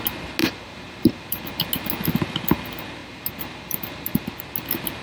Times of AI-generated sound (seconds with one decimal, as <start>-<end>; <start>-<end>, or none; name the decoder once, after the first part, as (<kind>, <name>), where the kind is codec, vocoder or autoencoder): 0.4-1.6 (vocoder, BigVGAN v2); 3.0-4.4